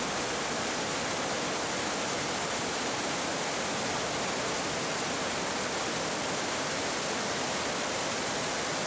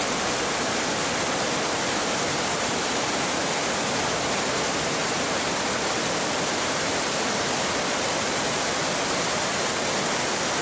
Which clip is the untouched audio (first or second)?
first